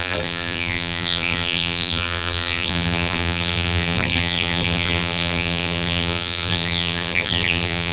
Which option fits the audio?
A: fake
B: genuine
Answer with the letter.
A